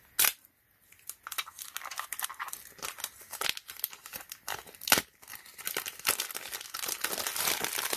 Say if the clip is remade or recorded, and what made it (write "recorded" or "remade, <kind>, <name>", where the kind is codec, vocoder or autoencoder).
recorded